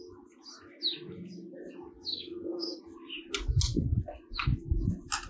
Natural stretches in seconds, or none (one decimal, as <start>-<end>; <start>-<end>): 0.0-2.1; 2.8-5.3